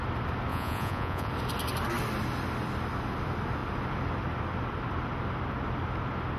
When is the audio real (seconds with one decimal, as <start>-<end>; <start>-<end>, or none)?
0.0-0.5; 1.3-6.4

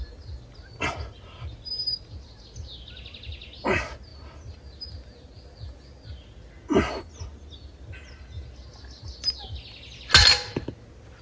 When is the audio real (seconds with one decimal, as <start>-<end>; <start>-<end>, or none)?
0.0-11.2

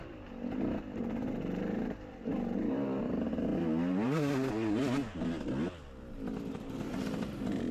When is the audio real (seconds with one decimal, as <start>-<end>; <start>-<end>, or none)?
5.0-6.5